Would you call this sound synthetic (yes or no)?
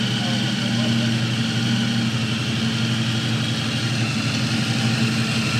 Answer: no